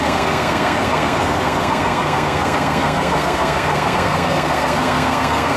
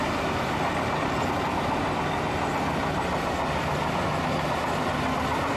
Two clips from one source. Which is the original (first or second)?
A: second